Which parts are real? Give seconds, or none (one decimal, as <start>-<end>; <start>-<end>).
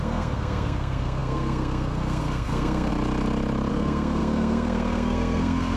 2.9-3.7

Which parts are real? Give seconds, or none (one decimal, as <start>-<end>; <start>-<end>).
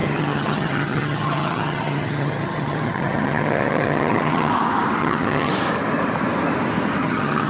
4.5-5.0; 5.5-7.0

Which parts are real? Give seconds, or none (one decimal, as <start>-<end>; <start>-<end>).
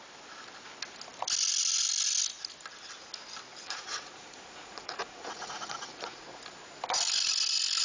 0.0-3.5; 6.4-7.8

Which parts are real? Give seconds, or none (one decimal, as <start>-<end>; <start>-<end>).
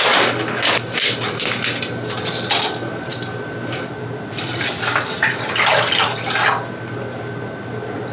0.0-3.1; 6.2-8.1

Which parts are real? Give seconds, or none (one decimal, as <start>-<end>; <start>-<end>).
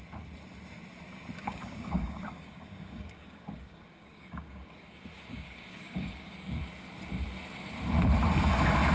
0.0-1.4; 6.6-8.9